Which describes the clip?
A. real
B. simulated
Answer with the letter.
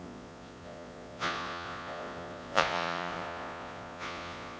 B